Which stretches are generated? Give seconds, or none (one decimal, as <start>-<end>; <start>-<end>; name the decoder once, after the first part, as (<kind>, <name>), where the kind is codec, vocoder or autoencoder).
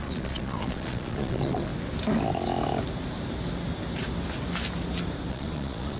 0.0-1.7 (vocoder, Vocos); 5.3-6.0